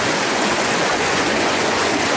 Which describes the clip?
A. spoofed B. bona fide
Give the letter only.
A